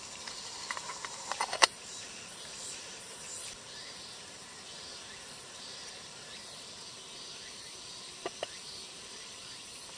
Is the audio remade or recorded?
remade